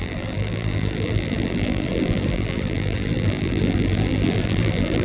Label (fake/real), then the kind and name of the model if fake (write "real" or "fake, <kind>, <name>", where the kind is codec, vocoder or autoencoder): fake, vocoder, BigVGAN v2